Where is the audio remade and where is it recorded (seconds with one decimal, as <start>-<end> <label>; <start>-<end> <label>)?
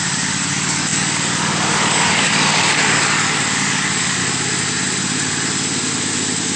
0.0-4.2 remade; 4.2-6.6 recorded